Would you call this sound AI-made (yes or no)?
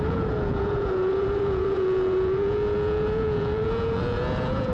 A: yes